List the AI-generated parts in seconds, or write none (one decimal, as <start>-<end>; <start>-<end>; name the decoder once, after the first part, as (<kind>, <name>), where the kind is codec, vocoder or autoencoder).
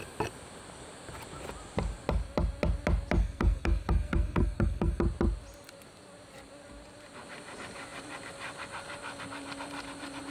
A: 3.2-5.0 (codec, SNAC)